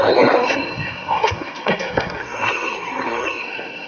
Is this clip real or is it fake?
fake